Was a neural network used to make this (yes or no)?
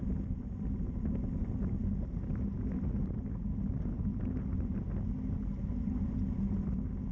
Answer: no